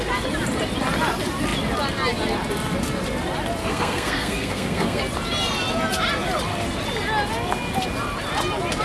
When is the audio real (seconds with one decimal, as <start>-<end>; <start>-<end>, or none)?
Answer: 0.0-3.6; 5.0-8.8